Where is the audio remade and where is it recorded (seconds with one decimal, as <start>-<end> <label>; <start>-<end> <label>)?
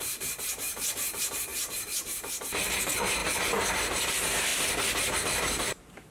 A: 0.0-3.2 remade; 3.2-4.1 recorded; 4.1-6.1 remade